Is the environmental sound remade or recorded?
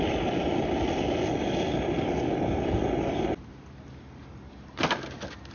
recorded